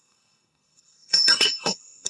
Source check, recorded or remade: remade